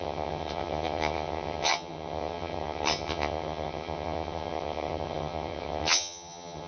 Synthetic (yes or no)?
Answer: yes